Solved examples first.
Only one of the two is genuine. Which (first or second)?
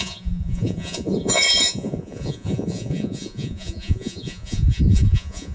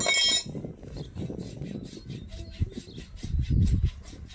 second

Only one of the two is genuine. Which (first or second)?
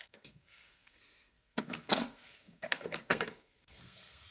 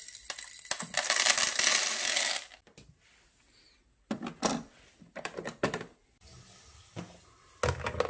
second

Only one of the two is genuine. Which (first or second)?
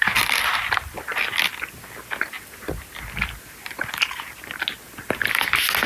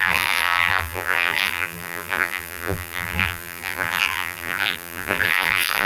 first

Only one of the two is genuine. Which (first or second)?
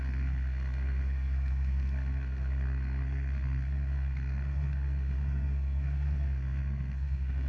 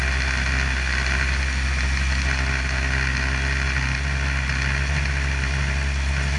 second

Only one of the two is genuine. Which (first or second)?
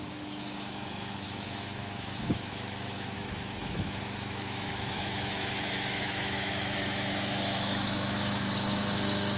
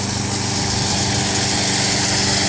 second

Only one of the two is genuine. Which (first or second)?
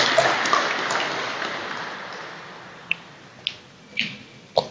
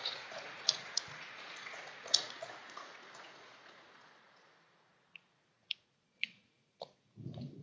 first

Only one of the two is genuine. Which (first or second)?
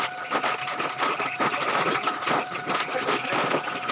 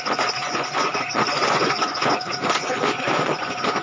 first